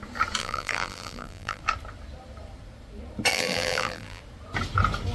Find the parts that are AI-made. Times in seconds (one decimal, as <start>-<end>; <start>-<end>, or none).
0.4-1.6; 3.3-4.2